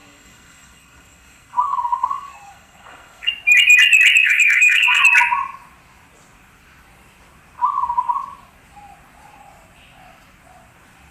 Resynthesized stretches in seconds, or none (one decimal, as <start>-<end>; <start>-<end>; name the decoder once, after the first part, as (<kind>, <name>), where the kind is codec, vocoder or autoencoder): 0.0-3.3 (codec, SNAC); 4.2-5.0

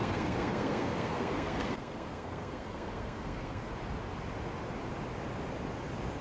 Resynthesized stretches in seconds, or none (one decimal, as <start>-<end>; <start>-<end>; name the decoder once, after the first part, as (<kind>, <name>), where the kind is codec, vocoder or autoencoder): 0.0-3.7 (codec, SNAC)

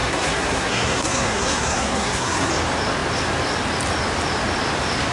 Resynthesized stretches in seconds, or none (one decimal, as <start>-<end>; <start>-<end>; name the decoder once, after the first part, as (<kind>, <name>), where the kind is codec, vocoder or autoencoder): 0.0-2.5 (codec, SNAC)

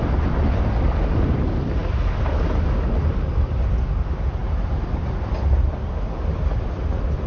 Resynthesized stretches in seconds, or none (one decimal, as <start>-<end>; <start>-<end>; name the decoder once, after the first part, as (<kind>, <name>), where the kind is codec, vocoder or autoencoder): none

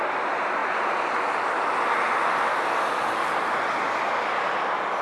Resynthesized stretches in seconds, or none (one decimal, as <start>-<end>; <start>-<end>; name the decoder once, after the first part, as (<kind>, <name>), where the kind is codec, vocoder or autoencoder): none

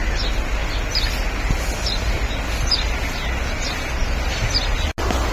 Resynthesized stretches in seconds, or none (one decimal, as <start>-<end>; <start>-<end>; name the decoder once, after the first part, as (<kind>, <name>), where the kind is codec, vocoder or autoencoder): none